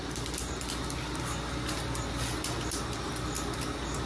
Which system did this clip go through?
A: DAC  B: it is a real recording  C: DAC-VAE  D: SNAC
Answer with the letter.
B